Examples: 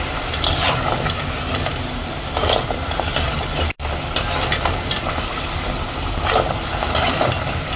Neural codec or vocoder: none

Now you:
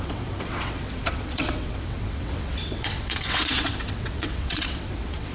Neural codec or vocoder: vocoder, WaveNeXt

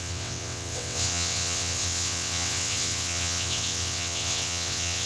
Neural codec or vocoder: vocoder, WaveNeXt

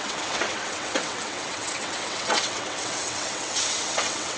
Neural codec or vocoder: vocoder, WaveNeXt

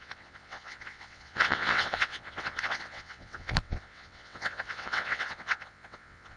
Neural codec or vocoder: vocoder, WaveNeXt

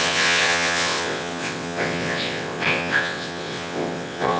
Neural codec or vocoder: vocoder, WaveNeXt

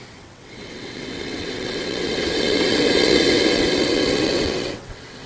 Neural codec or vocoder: vocoder, WaveNeXt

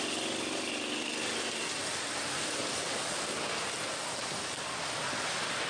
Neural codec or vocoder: none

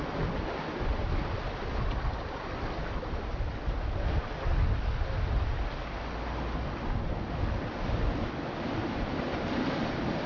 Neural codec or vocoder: none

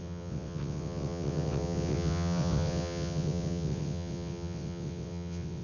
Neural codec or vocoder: vocoder, WaveNeXt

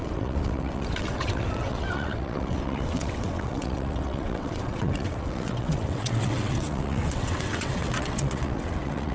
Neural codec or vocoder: vocoder, WaveNeXt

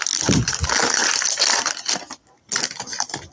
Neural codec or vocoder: none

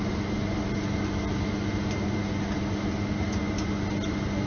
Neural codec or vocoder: none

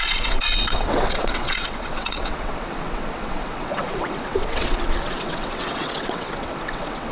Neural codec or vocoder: vocoder, WaveNeXt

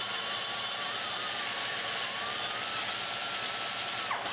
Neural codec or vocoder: none